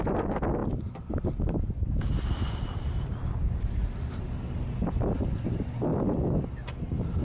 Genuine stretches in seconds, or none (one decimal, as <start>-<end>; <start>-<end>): 0.0-7.2